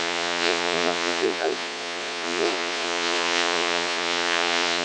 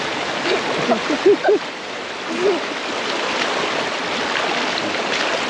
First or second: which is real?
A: second